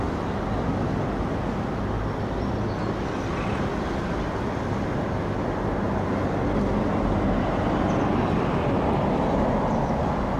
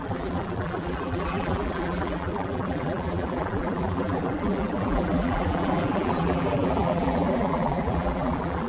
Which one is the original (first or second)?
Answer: first